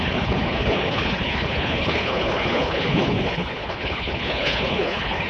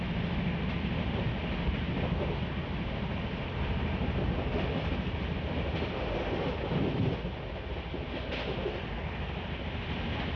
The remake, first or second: first